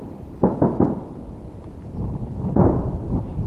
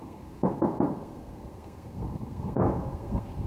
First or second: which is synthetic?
second